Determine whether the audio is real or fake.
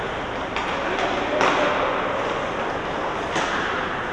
real